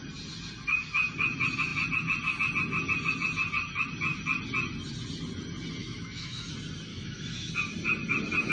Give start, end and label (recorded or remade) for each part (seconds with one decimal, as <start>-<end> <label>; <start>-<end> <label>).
0.0-5.8 recorded; 5.8-6.5 remade; 6.5-6.9 recorded; 6.9-7.5 remade; 7.5-8.5 recorded